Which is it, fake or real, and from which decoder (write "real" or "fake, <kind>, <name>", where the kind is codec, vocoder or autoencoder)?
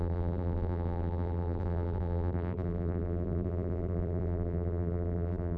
fake, vocoder, BigVGAN v2